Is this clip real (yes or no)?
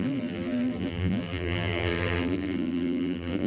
no